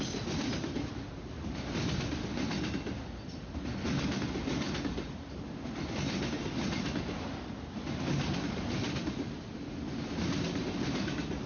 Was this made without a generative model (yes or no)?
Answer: yes